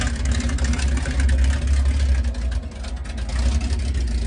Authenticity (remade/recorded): recorded